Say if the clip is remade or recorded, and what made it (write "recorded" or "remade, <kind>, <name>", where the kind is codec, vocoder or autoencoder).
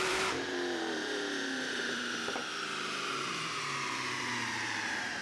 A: remade, vocoder, BigVGAN v2